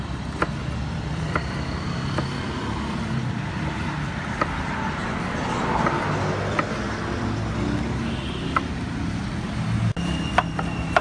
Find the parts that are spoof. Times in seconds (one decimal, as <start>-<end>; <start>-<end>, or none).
0.0-5.0; 9.9-11.0